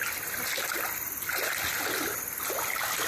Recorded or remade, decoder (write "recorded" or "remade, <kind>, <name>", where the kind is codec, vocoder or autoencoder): recorded